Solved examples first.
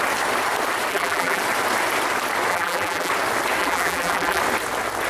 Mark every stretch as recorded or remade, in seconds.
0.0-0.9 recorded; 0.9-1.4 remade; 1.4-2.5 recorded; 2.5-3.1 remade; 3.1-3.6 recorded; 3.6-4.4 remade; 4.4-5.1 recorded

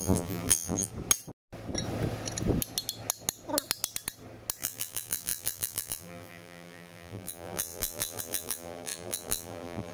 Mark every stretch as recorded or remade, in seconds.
0.0-0.9 remade; 0.9-4.6 recorded; 4.6-9.9 remade